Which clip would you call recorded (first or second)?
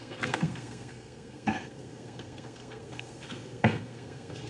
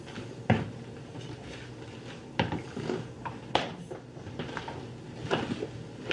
second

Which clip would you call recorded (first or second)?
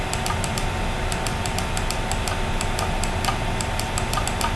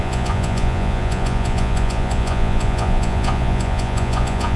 first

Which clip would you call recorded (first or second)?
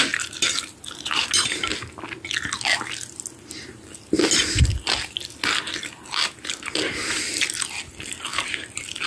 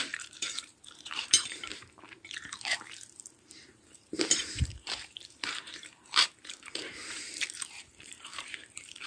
first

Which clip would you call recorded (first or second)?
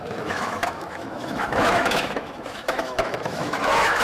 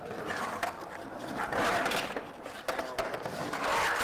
second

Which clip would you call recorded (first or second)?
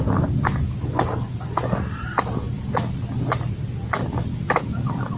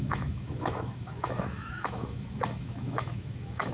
first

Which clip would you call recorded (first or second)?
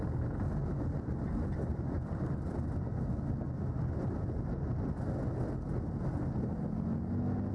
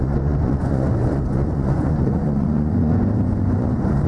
first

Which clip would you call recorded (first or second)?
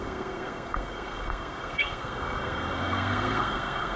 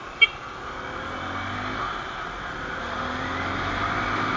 second